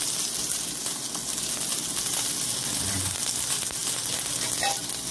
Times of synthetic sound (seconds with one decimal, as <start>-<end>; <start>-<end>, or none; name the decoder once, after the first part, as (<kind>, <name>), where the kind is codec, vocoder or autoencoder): none